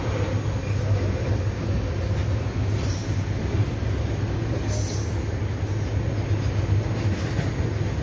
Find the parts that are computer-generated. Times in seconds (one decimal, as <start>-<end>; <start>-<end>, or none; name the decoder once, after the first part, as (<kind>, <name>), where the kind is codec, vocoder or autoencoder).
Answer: 3.4-4.0 (vocoder, BigVGAN v2)